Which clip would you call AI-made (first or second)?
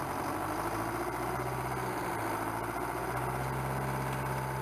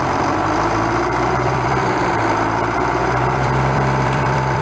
second